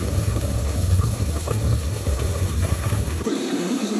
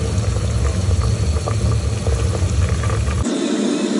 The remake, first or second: first